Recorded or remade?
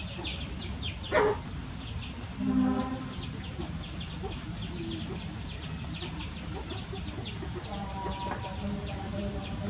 recorded